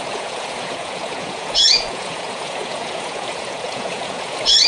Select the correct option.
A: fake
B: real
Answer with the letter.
A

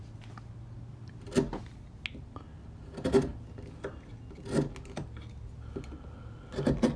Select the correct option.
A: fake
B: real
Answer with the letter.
B